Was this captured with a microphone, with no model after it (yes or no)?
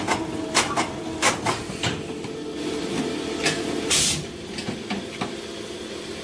yes